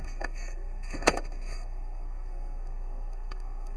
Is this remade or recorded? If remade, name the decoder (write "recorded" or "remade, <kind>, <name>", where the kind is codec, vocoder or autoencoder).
remade, codec, SNAC